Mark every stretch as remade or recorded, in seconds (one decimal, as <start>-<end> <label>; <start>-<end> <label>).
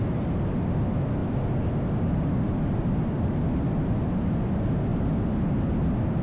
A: 0.0-6.2 recorded